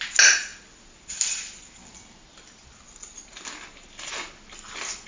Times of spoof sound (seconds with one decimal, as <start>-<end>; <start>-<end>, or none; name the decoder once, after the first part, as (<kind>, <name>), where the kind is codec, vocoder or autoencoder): none